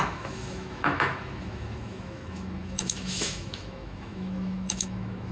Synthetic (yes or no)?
yes